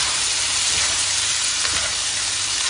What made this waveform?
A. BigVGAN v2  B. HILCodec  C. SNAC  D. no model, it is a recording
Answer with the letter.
A